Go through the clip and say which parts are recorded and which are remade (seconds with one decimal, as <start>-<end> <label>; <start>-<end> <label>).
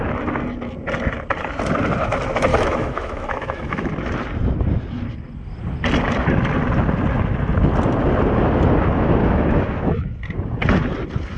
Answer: 0.0-2.5 recorded; 2.5-3.9 remade; 3.9-9.2 recorded; 9.2-10.1 remade; 10.1-11.4 recorded